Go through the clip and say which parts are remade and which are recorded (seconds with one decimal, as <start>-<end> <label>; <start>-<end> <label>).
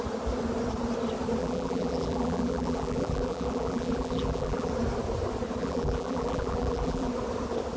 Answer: 0.0-1.4 recorded; 1.4-4.7 remade; 4.7-5.6 recorded; 5.6-7.1 remade; 7.1-7.8 recorded